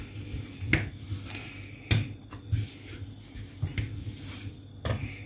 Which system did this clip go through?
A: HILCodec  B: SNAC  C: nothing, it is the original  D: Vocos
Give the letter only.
C